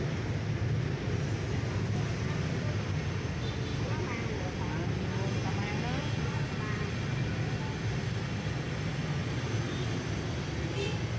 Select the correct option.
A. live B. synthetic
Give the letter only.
A